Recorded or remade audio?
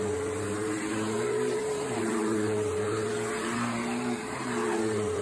remade